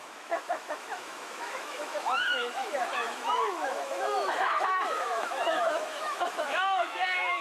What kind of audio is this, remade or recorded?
remade